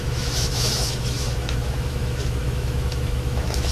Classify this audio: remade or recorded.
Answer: remade